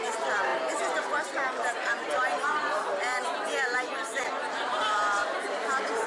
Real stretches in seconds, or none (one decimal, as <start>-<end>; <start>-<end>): 0.0-5.2